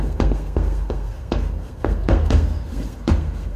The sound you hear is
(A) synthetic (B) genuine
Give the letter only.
A